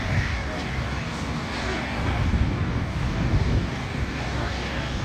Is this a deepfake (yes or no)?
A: yes